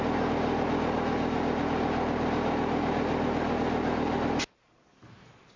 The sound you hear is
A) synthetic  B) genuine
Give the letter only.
B